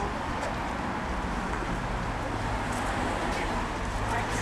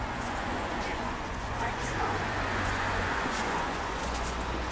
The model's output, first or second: second